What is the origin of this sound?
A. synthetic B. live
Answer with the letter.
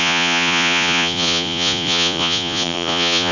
A